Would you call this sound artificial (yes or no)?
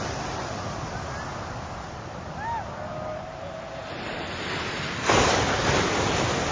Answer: no